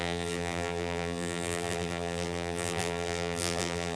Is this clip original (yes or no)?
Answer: no